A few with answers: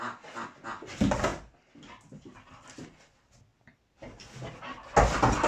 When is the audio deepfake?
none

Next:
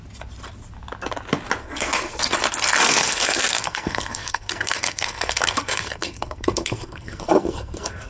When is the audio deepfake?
1.6-2.2 (codec, SNAC); 2.8-8.1

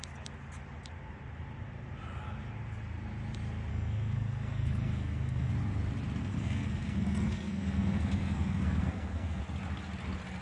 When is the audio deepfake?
3.7-5.5 (codec, SNAC); 6.2-9.4